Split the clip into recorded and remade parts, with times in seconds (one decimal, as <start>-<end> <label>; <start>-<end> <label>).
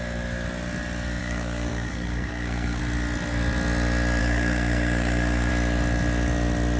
0.0-1.2 recorded; 1.2-2.8 remade; 2.8-4.2 recorded; 4.2-5.5 remade; 5.5-6.8 recorded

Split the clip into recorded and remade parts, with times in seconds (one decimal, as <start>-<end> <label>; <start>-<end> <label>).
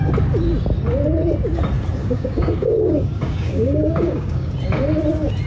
0.0-2.0 recorded; 2.0-4.5 remade; 4.5-5.5 recorded